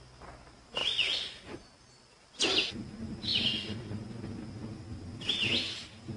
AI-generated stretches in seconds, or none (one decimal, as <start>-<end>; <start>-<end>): 0.8-1.7; 3.3-4.2